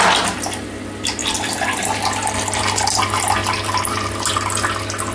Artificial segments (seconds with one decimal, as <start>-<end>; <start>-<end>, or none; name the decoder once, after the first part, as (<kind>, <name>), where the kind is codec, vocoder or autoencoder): 1.2-2.6 (vocoder, BigVGAN v2)

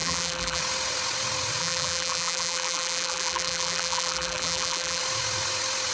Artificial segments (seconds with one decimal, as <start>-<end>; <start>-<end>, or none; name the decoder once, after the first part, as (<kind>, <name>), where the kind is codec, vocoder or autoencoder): 0.0-0.6 (vocoder, BigVGAN v2); 1.6-5.0

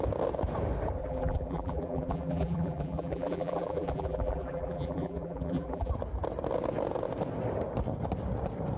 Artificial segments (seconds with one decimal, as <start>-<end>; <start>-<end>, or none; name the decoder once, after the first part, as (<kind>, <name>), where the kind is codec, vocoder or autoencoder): 1.0-5.9 (vocoder, BigVGAN v2)

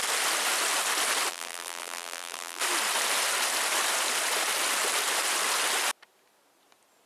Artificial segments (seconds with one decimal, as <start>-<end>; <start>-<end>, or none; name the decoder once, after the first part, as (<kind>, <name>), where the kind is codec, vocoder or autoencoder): 1.3-2.6 (vocoder, BigVGAN v2)